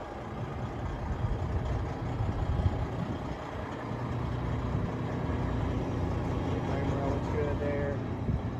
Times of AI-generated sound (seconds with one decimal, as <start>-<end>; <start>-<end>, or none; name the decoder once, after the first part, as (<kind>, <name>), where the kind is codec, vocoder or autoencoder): 7.6-8.6 (vocoder, BigVGAN v2)